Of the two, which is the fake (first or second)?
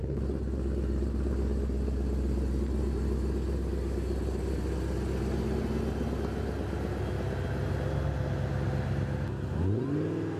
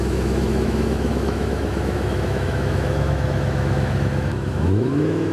second